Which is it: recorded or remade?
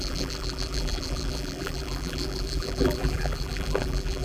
remade